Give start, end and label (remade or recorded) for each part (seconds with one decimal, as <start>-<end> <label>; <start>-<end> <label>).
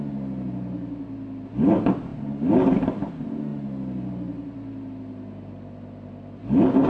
0.0-6.9 recorded